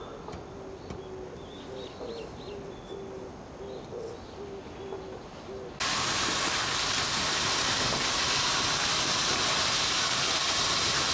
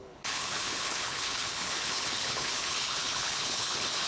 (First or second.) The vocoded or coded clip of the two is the second